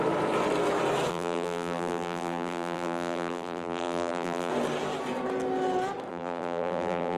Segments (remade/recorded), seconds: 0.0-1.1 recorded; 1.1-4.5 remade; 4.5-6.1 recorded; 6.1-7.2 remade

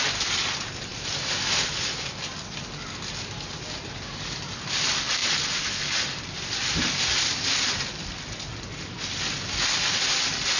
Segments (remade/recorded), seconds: 0.0-10.6 recorded

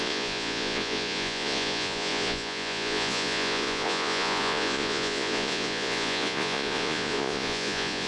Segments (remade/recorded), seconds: 0.0-8.1 remade